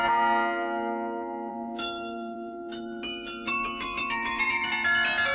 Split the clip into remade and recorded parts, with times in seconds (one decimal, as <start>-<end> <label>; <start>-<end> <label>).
0.0-1.5 recorded; 1.5-4.7 remade; 4.7-5.3 recorded